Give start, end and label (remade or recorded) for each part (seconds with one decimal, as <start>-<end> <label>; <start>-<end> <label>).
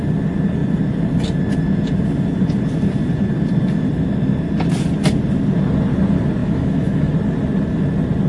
0.0-6.4 recorded; 6.4-7.1 remade; 7.1-8.3 recorded